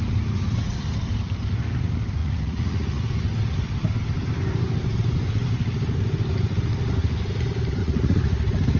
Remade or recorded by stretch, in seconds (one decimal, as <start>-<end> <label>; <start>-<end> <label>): 0.0-2.2 recorded; 2.2-3.0 remade; 3.0-7.8 recorded; 7.8-8.3 remade; 8.3-8.8 recorded